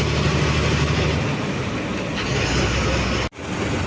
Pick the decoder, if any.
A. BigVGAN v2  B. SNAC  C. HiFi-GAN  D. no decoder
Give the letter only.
D